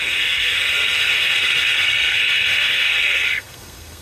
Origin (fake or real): fake